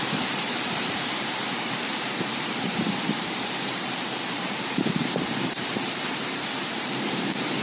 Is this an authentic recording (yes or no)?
no